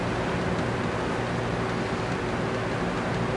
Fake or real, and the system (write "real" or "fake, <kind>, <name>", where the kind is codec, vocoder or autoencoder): real